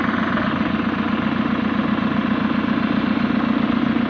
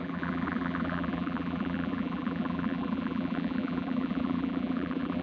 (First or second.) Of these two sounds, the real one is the first